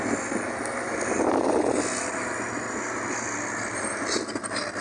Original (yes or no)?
yes